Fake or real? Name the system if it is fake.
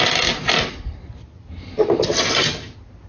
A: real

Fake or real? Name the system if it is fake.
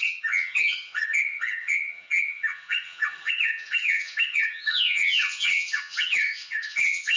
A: fake, vocoder, HiFi-GAN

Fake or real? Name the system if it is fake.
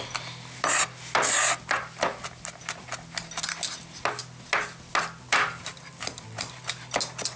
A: real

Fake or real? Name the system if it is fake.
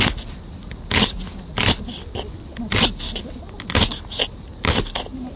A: real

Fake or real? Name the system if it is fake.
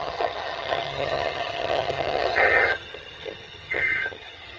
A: fake, vocoder, HiFi-GAN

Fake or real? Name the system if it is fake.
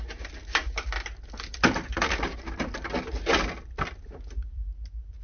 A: real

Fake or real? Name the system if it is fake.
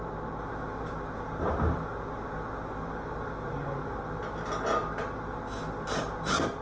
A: real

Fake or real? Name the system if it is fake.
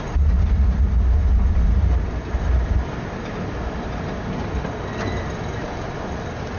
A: real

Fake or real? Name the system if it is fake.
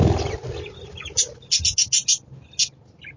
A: real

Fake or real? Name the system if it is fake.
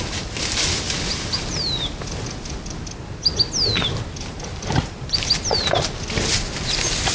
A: real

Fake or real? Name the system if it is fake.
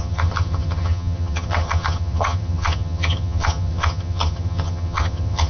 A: fake, vocoder, HiFi-GAN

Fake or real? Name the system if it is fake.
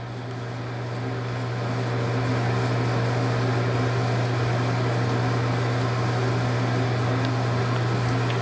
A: real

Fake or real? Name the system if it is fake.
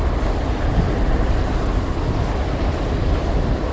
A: real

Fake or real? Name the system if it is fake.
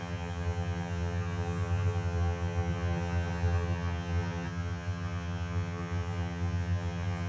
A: fake, vocoder, HiFi-GAN